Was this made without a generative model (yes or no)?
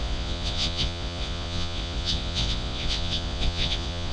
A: no